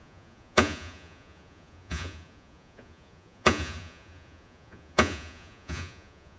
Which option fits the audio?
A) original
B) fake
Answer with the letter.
B